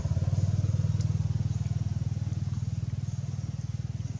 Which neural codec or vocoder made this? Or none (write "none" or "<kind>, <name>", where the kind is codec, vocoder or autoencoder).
none